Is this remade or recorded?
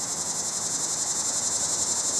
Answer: recorded